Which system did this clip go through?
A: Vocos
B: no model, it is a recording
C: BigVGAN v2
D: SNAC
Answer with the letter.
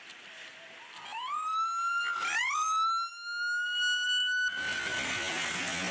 B